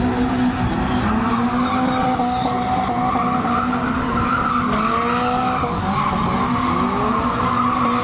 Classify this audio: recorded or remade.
recorded